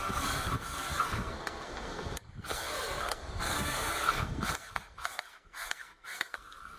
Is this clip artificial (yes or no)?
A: yes